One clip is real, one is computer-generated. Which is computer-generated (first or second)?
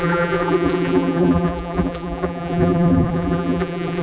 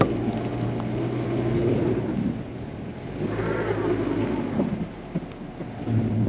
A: first